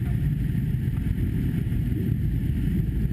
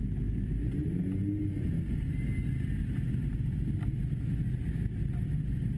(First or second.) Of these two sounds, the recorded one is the second